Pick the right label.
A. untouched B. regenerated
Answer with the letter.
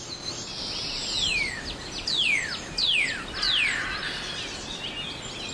A